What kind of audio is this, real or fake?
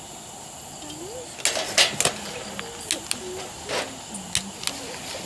real